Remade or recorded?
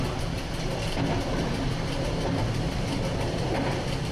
recorded